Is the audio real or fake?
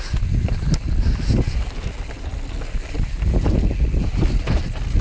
real